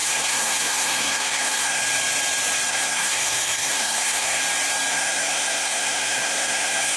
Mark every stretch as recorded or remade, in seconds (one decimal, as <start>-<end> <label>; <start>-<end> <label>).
0.0-1.8 remade; 1.8-2.7 recorded; 2.7-4.4 remade; 4.4-4.9 recorded; 4.9-7.0 remade